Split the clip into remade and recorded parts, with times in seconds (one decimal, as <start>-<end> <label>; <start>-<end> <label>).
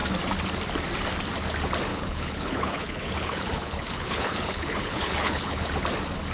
0.0-1.9 recorded; 1.9-5.7 remade; 5.7-6.3 recorded